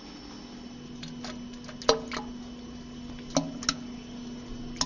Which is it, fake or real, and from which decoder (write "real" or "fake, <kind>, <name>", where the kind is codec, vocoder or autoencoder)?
real